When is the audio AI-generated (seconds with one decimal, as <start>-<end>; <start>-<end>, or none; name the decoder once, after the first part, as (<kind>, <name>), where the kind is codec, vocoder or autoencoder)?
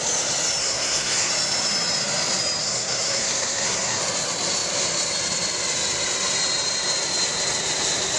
0.6-1.3 (codec, SNAC); 2.6-4.0